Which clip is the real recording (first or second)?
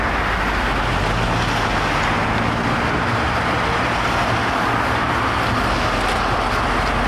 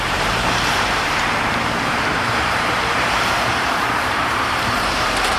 first